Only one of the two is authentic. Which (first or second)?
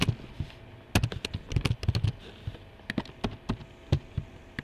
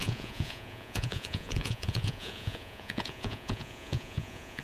first